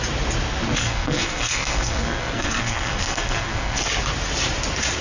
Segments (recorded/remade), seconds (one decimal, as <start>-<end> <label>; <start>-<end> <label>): 0.0-0.8 recorded; 0.8-3.8 remade; 3.8-5.0 recorded